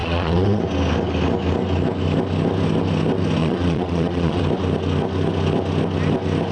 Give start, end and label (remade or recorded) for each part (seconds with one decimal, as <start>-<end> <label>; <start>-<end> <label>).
0.0-0.6 remade; 0.6-3.4 recorded; 3.4-4.4 remade; 4.4-6.5 recorded